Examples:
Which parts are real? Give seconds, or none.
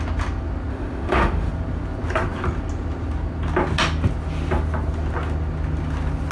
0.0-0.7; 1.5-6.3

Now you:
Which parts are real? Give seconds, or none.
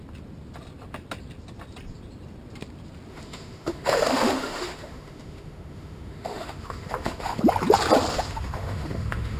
0.0-3.1; 7.4-8.1